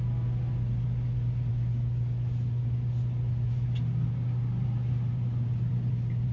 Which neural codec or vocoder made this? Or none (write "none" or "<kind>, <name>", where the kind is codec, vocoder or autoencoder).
none